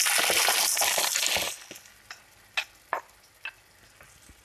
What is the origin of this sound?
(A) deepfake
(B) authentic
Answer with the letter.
B